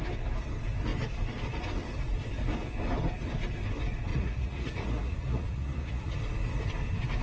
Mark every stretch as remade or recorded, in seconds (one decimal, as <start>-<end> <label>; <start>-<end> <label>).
0.0-4.1 recorded; 4.1-6.2 remade; 6.2-7.2 recorded